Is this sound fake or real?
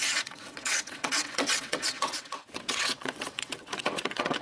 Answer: fake